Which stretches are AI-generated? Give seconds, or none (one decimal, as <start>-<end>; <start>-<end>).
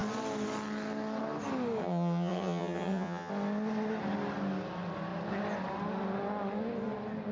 1.8-3.3